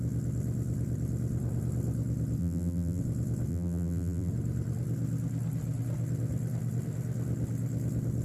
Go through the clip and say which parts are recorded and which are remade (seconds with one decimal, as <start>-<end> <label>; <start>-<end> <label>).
0.0-2.4 recorded; 2.4-3.0 remade; 3.0-3.5 recorded; 3.5-4.3 remade; 4.3-8.2 recorded